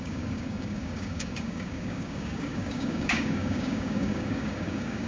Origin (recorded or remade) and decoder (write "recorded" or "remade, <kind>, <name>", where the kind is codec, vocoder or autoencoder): remade, codec, DAC